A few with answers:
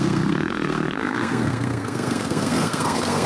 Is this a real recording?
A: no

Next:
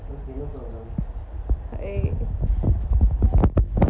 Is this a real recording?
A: yes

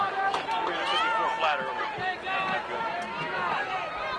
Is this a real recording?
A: yes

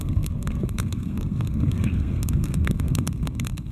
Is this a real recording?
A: no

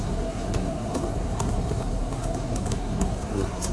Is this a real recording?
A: no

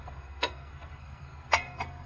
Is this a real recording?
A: no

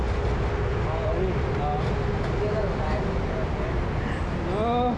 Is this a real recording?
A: yes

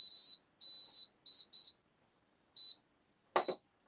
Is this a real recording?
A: yes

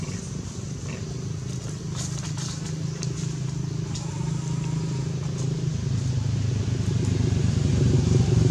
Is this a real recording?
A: yes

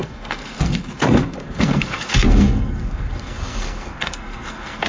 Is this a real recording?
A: no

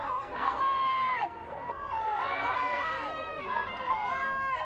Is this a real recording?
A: no